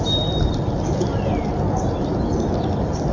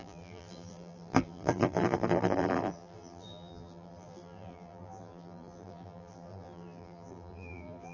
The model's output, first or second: second